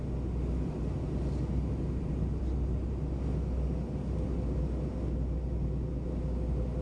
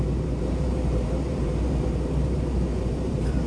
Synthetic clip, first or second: second